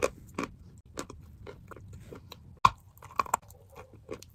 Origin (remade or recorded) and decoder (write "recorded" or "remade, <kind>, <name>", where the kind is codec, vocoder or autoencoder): recorded